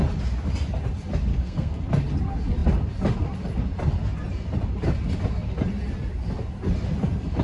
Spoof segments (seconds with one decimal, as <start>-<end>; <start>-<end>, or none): 1.3-1.8